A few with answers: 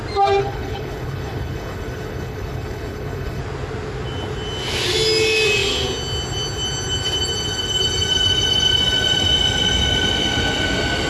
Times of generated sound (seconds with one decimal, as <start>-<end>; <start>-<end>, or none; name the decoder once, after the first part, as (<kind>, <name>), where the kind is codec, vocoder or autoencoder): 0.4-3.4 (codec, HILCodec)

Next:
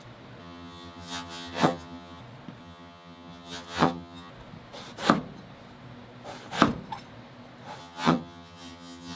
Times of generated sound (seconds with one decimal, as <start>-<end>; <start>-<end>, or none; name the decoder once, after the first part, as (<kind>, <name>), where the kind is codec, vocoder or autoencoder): 0.4-2.2 (vocoder, HiFi-GAN); 2.6-4.3; 7.8-9.2

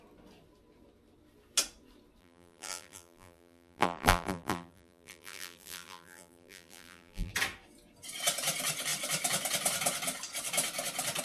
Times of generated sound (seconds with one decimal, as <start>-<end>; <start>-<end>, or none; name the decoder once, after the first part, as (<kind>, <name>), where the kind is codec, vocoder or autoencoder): 2.2-7.3 (vocoder, BigVGAN v2)

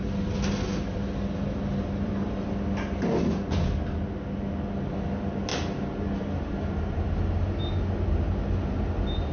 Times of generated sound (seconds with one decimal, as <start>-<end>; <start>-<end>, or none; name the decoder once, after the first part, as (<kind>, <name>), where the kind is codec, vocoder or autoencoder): none

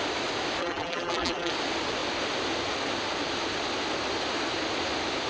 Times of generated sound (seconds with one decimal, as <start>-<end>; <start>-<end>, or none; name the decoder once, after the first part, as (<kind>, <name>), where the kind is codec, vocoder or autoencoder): 0.6-1.5 (vocoder, BigVGAN v2)

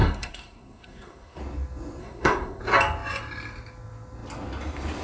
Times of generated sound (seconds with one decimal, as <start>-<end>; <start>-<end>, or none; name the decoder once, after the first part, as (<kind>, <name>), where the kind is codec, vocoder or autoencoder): 0.0-1.4 (codec, SNAC); 2.0-2.6

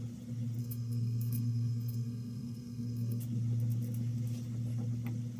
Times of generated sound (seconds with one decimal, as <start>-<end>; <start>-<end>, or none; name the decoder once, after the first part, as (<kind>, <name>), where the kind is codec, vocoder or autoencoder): 0.6-3.2 (codec, SNAC)